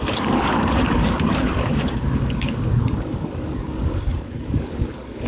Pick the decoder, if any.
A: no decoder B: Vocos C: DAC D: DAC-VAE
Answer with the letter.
C